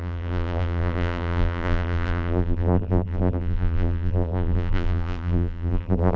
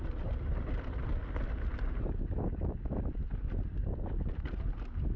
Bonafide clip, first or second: second